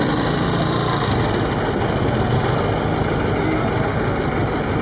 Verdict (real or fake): real